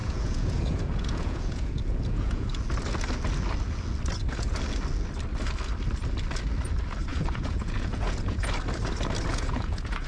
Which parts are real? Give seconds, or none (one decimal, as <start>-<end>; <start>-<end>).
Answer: 2.6-7.1; 8.5-9.3